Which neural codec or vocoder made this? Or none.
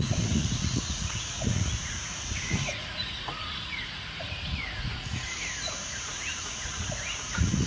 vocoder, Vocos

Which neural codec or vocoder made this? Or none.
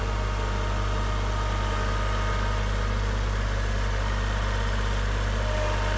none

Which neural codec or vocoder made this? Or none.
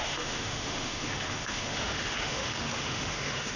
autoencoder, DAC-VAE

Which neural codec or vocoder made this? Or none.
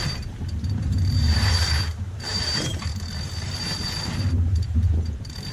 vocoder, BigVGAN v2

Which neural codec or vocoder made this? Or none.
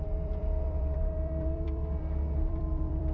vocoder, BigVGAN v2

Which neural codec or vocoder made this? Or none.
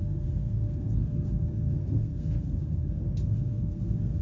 codec, SNAC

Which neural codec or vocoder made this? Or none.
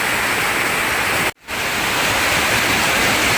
none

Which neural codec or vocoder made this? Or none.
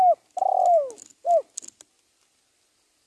none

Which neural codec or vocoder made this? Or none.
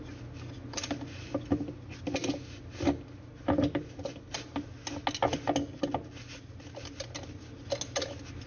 none